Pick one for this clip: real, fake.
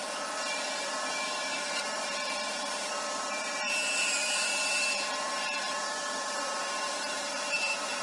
fake